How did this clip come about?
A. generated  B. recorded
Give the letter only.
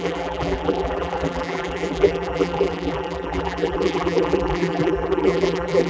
A